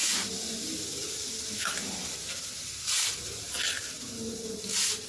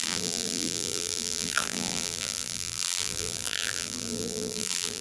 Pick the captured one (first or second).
first